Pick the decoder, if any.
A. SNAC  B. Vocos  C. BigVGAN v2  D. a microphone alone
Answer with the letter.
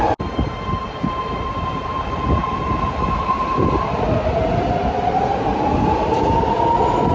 D